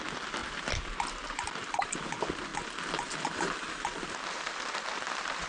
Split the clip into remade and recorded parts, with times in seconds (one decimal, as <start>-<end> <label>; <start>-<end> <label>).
0.0-0.4 recorded; 0.4-1.9 remade; 1.9-5.5 recorded